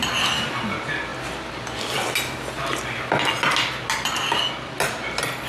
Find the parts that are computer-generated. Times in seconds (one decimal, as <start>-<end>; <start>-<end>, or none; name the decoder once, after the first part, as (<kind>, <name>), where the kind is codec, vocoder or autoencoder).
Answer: none